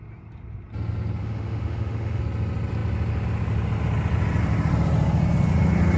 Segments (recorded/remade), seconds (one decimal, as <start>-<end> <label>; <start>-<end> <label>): 0.0-1.2 recorded; 1.2-2.2 remade; 2.2-6.0 recorded